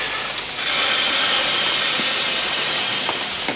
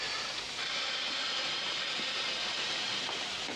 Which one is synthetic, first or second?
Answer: second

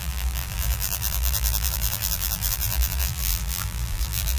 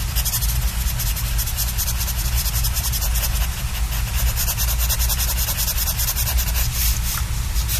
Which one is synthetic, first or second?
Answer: first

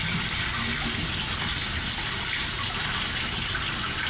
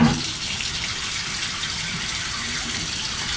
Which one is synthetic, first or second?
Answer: second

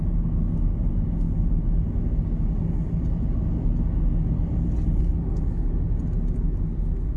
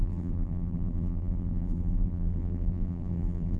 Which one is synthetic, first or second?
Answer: second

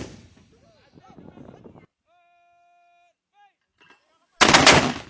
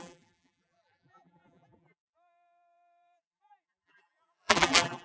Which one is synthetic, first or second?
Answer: second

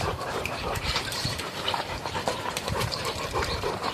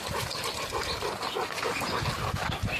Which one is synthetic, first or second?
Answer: first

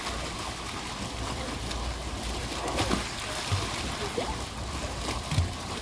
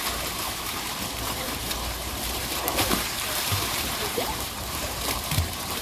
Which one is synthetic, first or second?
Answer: second